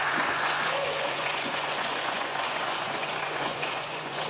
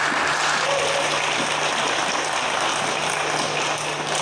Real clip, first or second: second